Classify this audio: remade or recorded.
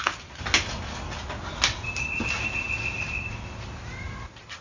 recorded